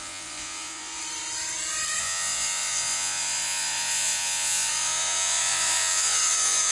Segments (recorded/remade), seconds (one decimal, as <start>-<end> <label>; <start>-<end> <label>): 0.0-1.0 remade; 1.0-2.0 recorded; 2.0-6.7 remade